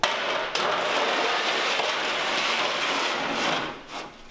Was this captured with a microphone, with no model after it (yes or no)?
yes